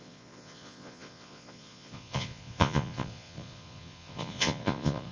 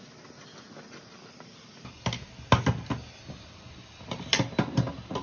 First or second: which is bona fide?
second